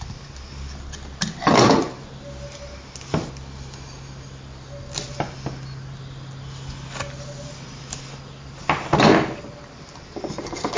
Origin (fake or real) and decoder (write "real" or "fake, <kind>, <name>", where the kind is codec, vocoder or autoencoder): real